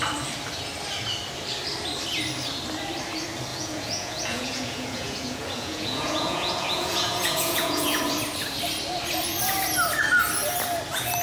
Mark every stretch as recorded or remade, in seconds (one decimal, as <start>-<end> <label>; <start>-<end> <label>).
0.0-3.5 recorded; 3.5-8.0 remade; 8.0-11.2 recorded